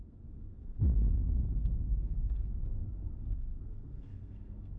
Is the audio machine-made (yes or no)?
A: yes